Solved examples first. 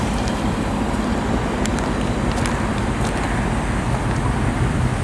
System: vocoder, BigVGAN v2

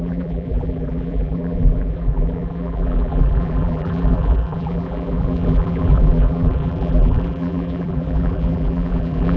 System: vocoder, BigVGAN v2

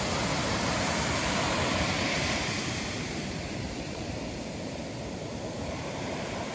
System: vocoder, BigVGAN v2